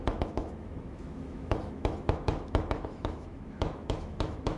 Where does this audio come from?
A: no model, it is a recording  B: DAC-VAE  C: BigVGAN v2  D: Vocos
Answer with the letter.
B